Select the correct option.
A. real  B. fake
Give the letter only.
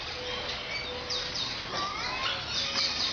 A